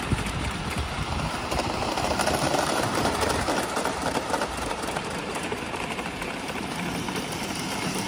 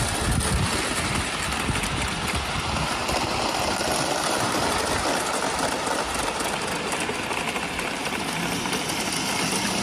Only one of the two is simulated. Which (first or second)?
first